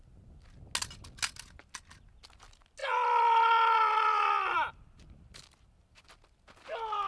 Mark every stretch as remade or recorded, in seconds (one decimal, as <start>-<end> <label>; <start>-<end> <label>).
0.0-2.8 recorded; 2.8-6.1 remade; 6.1-7.1 recorded